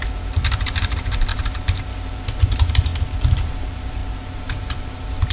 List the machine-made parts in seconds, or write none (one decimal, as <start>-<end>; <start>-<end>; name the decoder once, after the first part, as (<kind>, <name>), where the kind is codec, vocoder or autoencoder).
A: 0.0-2.9 (vocoder, BigVGAN v2); 3.4-5.3